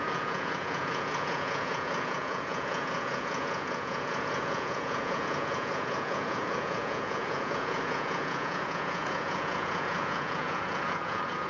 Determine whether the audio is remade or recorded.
remade